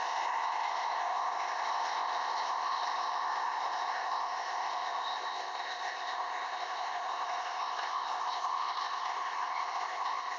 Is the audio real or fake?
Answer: fake